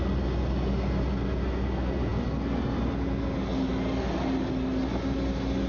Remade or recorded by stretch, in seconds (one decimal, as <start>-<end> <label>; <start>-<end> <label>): 0.0-5.7 recorded